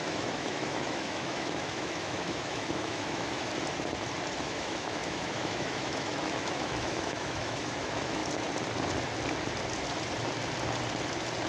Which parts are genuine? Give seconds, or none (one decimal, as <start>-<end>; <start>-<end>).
3.5-4.4; 8.2-11.5